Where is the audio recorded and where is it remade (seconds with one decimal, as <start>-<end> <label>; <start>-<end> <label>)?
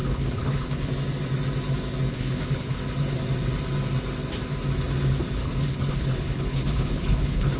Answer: 0.0-0.9 remade; 0.9-2.1 recorded; 2.1-2.8 remade; 2.8-5.4 recorded; 5.4-7.6 remade